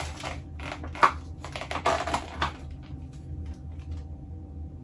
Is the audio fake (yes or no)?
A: no